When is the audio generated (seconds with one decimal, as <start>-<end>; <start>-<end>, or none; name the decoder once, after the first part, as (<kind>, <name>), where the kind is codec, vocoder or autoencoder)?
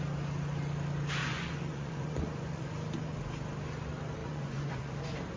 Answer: 1.2-2.7 (vocoder, Vocos); 4.2-5.0